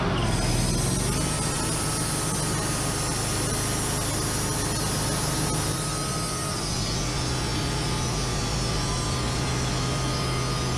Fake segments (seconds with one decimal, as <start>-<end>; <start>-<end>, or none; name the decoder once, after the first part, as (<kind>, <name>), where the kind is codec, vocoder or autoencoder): none

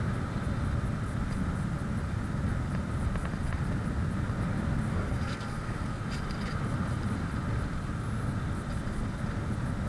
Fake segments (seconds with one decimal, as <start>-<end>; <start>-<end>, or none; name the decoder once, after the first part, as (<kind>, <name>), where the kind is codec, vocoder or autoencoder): 4.9-6.0 (codec, SNAC)

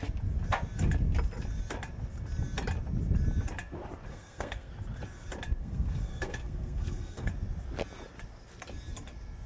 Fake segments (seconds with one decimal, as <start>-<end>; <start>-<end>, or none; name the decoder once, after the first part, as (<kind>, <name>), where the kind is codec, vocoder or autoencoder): 4.1-4.7 (codec, SNAC); 5.6-7.3

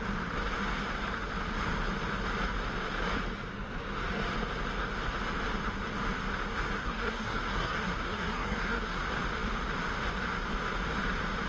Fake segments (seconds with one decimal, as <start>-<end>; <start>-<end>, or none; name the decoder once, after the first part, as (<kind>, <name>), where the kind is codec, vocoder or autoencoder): 6.8-9.0 (codec, SNAC)

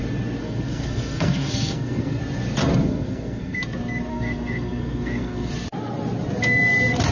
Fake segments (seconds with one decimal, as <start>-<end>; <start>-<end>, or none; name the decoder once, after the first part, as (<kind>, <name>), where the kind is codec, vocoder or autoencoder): 0.4-2.2 (codec, SNAC); 2.8-3.6; 4.1-5.5

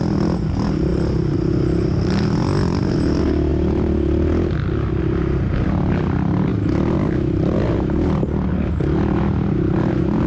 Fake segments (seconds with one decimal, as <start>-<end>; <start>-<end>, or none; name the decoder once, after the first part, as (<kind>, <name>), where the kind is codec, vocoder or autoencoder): none

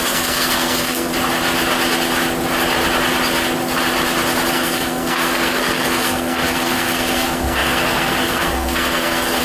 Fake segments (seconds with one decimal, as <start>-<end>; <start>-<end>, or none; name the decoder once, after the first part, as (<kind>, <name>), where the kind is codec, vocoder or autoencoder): 0.0-1.1 (codec, SNAC); 4.5-9.4